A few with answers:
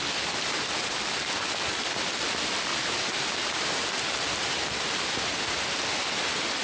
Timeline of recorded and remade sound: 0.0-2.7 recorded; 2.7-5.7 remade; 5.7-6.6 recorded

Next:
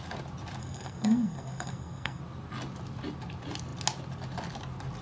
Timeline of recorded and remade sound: 0.0-0.6 recorded; 0.6-2.2 remade; 2.2-5.0 recorded

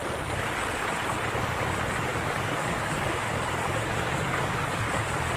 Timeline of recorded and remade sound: 0.0-2.1 recorded; 2.1-5.0 remade; 5.0-5.4 recorded

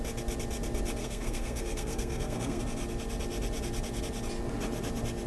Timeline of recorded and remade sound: 0.0-1.0 recorded; 1.0-2.6 remade; 2.6-5.3 recorded

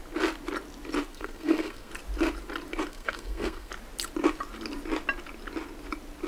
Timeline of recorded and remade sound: 0.0-1.1 recorded; 1.1-1.9 remade; 1.9-2.9 recorded; 2.9-3.7 remade; 3.7-6.3 recorded

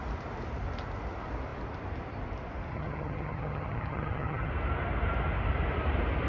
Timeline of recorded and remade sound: 0.0-2.7 recorded; 2.7-4.5 remade; 4.5-6.3 recorded